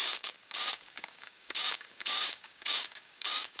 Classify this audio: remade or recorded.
remade